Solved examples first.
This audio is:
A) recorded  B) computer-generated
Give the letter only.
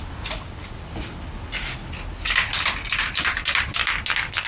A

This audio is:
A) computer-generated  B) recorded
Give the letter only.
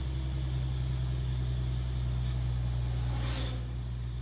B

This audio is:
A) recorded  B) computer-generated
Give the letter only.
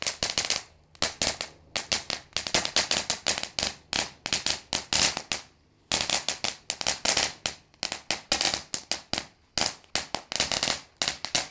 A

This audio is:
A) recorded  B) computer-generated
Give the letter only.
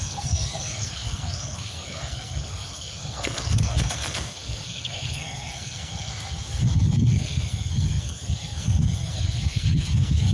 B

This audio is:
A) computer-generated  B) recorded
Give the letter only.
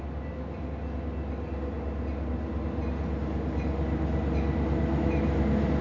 B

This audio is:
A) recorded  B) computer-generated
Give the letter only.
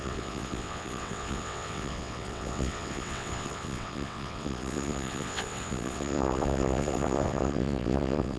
B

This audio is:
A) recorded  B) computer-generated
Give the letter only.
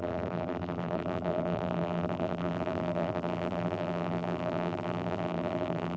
B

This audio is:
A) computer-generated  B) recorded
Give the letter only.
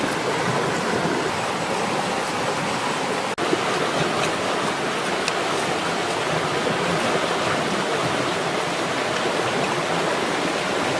B